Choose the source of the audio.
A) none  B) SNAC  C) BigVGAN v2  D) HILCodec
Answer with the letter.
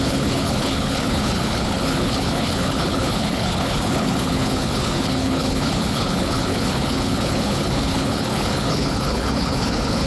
D